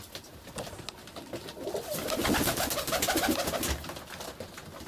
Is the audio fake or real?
real